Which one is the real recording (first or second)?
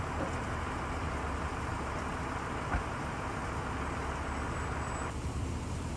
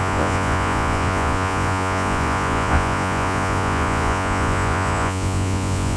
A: first